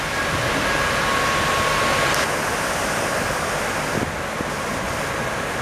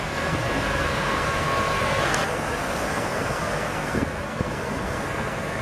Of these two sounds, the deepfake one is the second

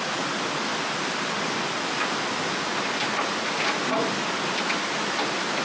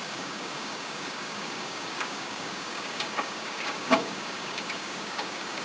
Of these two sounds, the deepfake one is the second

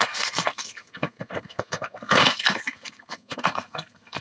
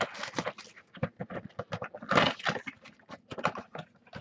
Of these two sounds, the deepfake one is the first